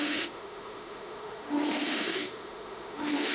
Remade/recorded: remade